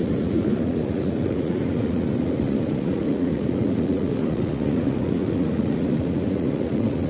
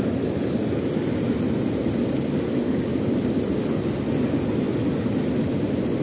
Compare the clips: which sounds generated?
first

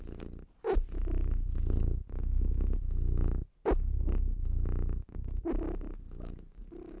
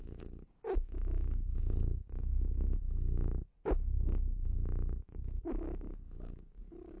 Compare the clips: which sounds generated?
second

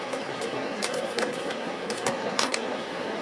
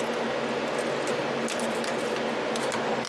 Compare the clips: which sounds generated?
first